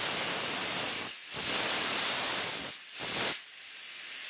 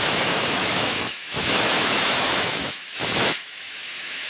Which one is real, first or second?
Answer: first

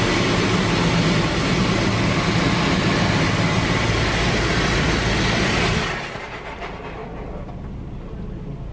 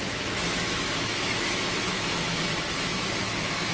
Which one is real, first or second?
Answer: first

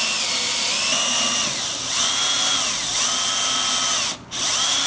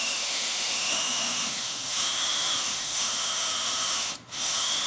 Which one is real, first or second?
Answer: first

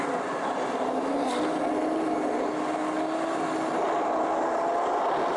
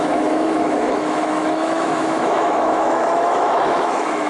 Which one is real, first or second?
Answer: first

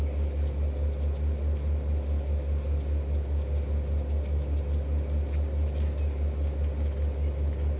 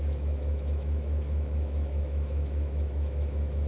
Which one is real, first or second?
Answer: first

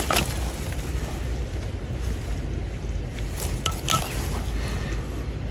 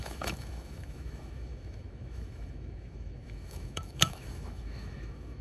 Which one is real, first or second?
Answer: first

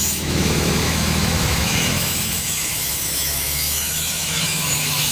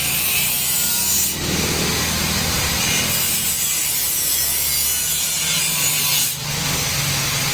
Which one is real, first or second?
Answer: second